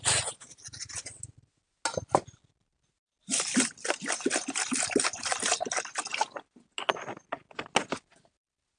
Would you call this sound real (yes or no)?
yes